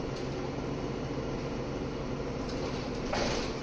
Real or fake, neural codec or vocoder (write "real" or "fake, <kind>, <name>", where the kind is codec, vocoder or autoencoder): real